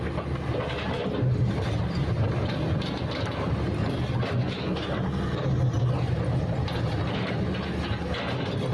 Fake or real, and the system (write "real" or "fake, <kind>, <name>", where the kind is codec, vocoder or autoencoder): real